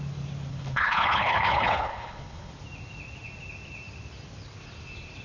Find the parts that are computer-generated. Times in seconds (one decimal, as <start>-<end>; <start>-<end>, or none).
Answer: 0.5-2.5